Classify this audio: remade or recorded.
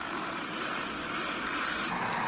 recorded